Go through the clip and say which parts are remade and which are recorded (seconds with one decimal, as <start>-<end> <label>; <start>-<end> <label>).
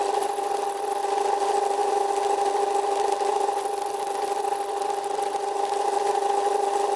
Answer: 0.0-7.0 recorded